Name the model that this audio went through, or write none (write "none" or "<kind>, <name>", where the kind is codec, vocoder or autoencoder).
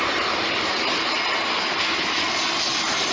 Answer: none